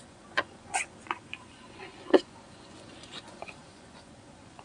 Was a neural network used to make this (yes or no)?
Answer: yes